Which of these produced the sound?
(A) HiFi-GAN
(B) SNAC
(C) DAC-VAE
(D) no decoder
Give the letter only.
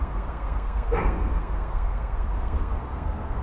B